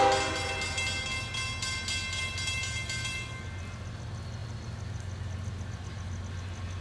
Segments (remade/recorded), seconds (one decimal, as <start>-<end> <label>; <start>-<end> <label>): 0.0-6.8 recorded